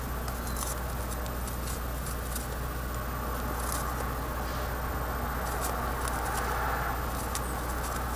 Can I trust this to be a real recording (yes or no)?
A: yes